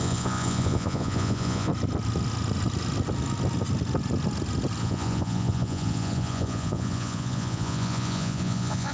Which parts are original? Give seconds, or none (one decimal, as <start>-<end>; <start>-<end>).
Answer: 1.7-4.8

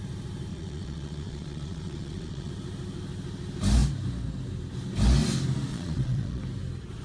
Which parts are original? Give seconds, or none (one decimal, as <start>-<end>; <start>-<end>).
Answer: 0.0-0.5; 2.5-5.7; 6.4-7.0

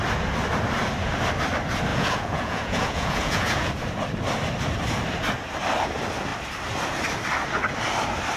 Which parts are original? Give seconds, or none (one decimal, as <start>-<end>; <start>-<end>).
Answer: 0.0-1.9; 3.7-8.4

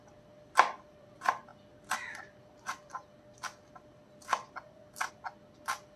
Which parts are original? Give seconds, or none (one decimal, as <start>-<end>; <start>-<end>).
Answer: 0.0-6.0

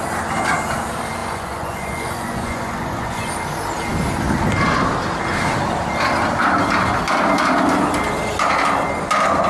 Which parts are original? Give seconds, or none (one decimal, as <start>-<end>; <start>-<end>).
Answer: 0.0-1.2; 3.3-9.5

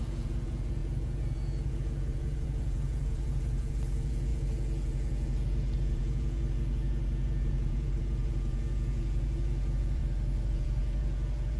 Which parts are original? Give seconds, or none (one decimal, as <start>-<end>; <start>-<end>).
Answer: 10.0-10.5